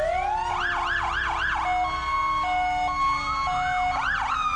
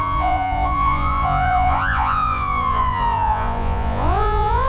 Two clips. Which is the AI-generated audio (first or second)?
second